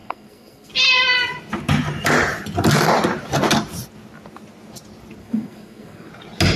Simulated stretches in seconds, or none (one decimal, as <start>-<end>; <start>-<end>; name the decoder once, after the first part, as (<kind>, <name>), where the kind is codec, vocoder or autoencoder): 0.0-0.7 (codec, SNAC); 5.2-6.1